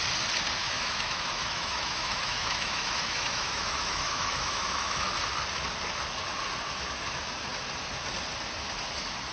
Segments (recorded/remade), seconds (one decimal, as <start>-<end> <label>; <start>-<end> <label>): 0.0-0.6 recorded; 0.6-5.1 remade; 5.1-9.3 recorded